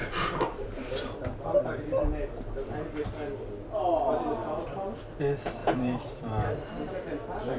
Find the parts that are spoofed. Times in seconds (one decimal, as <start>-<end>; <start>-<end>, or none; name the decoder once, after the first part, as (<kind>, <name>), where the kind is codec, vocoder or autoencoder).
4.4-5.0 (vocoder, BigVGAN v2); 5.6-6.2